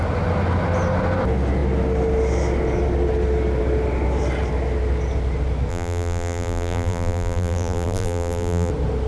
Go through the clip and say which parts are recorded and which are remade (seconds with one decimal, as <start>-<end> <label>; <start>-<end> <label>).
0.0-5.7 recorded; 5.7-8.7 remade; 8.7-9.1 recorded